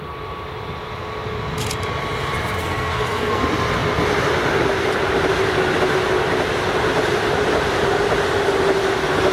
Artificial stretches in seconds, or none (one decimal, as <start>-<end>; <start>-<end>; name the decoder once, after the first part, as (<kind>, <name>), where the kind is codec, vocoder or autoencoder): 2.6-3.4 (codec, SNAC)

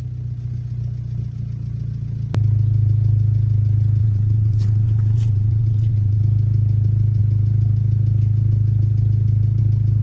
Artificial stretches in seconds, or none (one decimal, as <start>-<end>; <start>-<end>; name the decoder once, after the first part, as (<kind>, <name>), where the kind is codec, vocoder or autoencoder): 4.0-6.2 (vocoder, WaveNeXt)

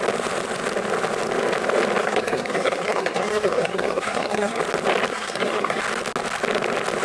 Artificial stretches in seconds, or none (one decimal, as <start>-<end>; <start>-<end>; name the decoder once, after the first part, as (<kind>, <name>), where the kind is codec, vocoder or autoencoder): 2.0-4.6 (codec, SNAC); 5.1-5.8

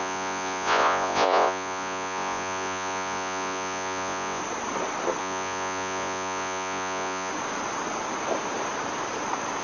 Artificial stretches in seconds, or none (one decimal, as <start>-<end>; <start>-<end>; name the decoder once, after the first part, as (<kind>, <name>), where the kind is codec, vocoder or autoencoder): 0.0-4.4 (vocoder, Vocos); 5.2-7.3

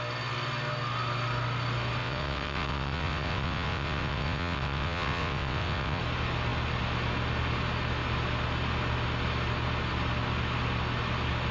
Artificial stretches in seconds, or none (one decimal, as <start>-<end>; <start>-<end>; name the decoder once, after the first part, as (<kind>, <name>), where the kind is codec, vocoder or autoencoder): 2.0-6.0 (vocoder, WaveNeXt)

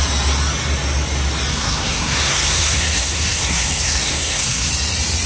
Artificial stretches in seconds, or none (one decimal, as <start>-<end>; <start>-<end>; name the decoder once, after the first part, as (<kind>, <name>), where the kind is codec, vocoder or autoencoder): 1.5-4.7 (codec, SNAC)

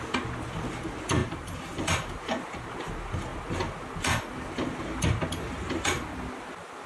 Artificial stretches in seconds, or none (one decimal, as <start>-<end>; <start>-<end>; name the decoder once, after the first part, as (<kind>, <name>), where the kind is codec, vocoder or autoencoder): 1.2-1.8 (vocoder, BigVGAN v2)

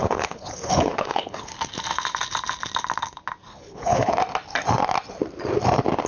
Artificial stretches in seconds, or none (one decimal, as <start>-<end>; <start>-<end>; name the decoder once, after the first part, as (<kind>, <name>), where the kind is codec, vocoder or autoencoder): 0.0-1.5 (codec, HILCodec); 3.5-4.1